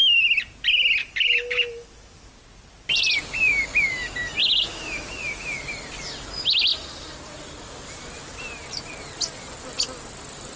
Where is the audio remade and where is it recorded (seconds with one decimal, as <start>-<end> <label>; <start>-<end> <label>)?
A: 0.0-1.0 recorded; 1.0-2.3 remade; 2.3-4.4 recorded; 4.4-5.6 remade; 5.6-10.6 recorded